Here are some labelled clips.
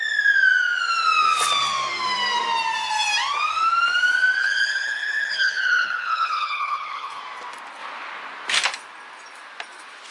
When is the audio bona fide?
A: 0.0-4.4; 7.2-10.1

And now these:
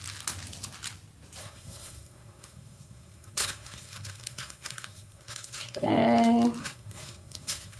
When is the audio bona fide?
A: 0.0-1.4; 5.9-6.6